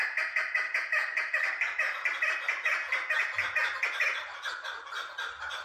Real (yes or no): yes